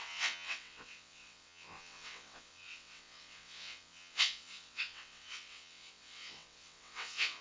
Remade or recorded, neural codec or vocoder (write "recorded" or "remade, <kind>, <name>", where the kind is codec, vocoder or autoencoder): remade, vocoder, WaveNeXt